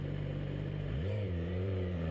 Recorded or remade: remade